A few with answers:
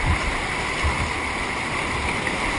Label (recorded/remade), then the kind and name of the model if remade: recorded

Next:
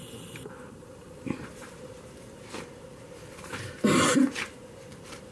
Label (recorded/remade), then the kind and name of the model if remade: remade, vocoder, BigVGAN v2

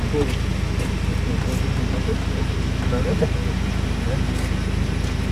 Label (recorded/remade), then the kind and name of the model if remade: recorded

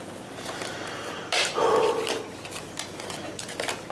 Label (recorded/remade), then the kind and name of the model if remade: recorded